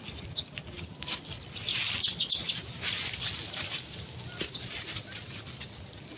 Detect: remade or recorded recorded